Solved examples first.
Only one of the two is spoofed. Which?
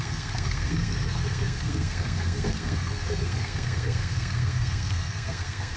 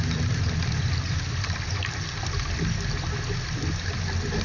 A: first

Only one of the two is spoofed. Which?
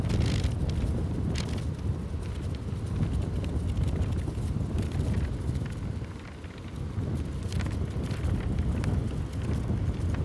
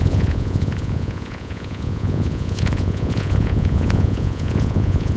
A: second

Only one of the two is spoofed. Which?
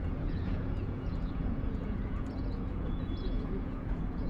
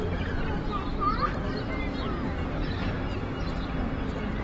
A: first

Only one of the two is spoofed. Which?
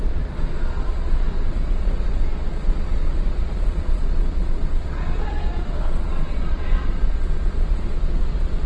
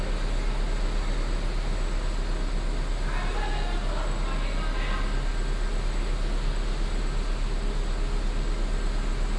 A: first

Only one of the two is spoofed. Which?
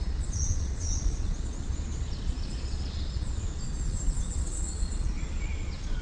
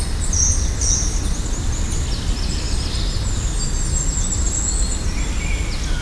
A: first